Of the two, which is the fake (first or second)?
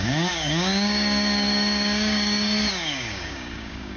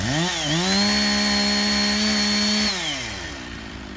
first